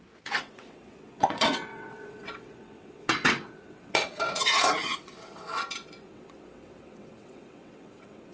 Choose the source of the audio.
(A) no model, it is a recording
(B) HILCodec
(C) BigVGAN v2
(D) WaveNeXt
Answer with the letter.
D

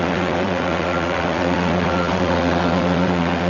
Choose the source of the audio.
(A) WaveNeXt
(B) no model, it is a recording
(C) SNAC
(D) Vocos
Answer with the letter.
A